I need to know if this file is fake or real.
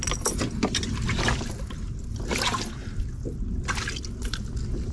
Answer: real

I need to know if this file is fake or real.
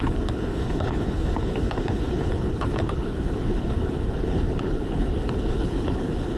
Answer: fake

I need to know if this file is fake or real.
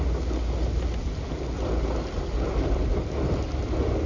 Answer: real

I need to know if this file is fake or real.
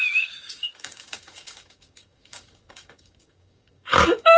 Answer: fake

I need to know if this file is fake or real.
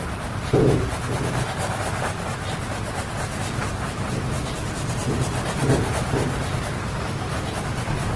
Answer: fake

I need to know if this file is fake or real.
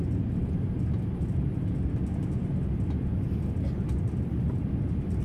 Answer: real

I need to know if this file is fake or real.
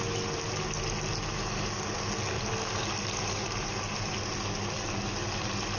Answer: real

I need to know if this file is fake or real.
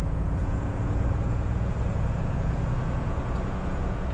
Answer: fake